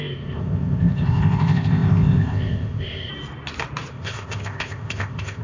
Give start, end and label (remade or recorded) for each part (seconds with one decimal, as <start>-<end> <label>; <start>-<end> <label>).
0.0-3.1 remade; 3.1-3.9 recorded; 3.9-5.4 remade